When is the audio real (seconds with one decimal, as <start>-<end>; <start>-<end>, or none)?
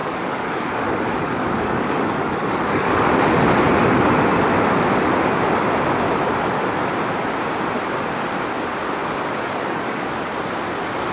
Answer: 3.1-9.0; 10.0-11.1